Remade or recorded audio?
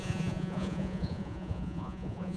remade